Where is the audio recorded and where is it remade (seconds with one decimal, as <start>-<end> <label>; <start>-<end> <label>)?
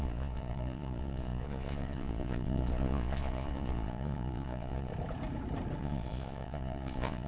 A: 0.0-4.9 remade; 4.9-5.8 recorded; 5.8-7.3 remade